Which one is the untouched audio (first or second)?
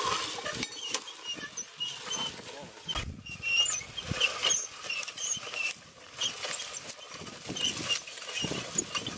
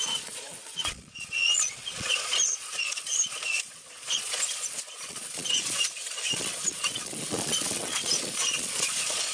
first